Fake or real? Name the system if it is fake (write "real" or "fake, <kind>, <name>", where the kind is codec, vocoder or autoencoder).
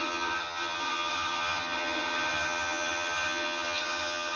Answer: fake, vocoder, HiFi-GAN